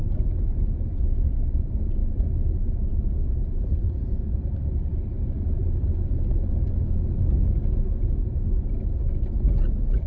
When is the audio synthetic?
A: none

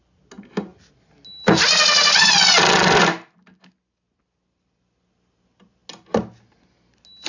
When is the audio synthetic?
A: none

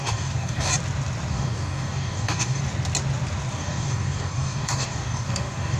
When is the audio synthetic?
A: 0.0-0.7 (codec, DAC); 1.3-2.6; 3.5-5.8

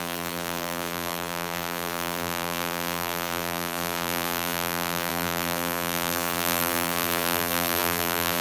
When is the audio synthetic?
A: 0.0-8.4 (vocoder, BigVGAN v2)

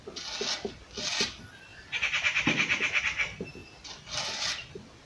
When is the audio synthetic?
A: 1.7-3.0 (vocoder, BigVGAN v2)

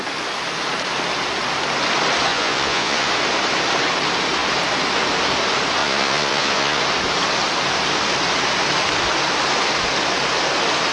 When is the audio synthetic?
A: 2.3-3.1 (vocoder, Vocos); 5.8-6.8

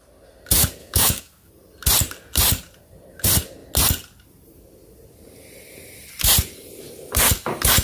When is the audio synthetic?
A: 0.8-1.5 (autoencoder, DAC-VAE)

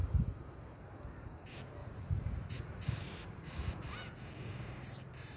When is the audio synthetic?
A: 1.8-3.9 (vocoder, Vocos)